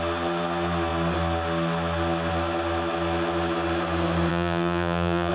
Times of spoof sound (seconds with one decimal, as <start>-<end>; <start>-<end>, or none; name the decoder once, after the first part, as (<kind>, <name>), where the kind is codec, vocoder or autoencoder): 4.3-5.3 (vocoder, BigVGAN v2)